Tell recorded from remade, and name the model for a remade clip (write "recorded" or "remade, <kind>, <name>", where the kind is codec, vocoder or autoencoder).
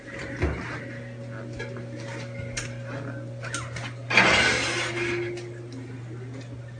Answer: recorded